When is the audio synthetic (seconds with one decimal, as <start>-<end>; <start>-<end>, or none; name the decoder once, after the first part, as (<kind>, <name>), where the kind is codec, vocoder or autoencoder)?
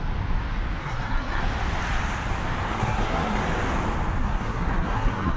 0.8-1.4 (codec, SNAC); 2.7-3.4; 4.2-5.4